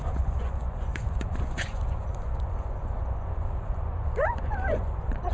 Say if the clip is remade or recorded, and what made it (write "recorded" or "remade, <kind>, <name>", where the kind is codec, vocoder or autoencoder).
remade, vocoder, Vocos